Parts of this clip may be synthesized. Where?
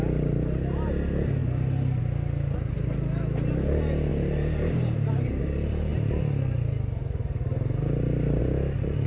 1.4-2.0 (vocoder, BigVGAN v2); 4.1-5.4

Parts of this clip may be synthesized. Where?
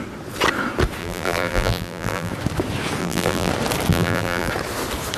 1.0-2.3 (vocoder, BigVGAN v2); 3.0-3.5; 3.9-4.5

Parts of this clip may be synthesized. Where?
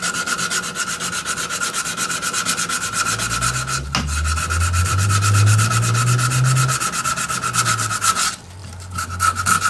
4.8-5.7 (vocoder, BigVGAN v2); 8.6-9.1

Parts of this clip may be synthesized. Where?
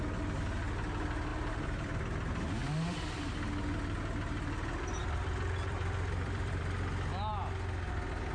1.3-2.0 (vocoder, BigVGAN v2); 2.6-3.3; 5.0-6.6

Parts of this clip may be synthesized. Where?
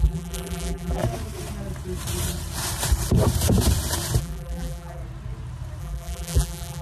0.0-1.0 (vocoder, BigVGAN v2); 4.2-5.0; 5.8-6.8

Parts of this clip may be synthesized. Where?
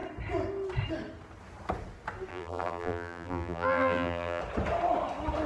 2.3-4.4 (vocoder, BigVGAN v2)